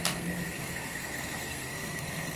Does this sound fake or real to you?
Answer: fake